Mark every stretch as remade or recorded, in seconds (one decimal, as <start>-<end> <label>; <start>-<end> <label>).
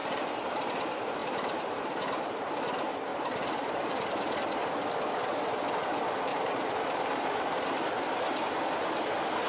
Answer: 0.0-0.7 remade; 0.7-1.2 recorded; 1.2-1.8 remade; 1.8-6.3 recorded; 6.3-7.5 remade; 7.5-9.5 recorded